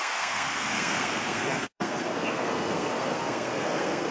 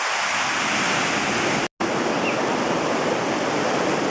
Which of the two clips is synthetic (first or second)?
first